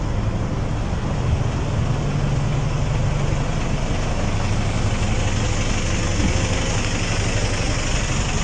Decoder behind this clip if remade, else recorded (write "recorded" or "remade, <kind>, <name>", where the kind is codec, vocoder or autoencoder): recorded